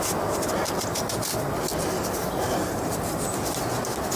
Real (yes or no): yes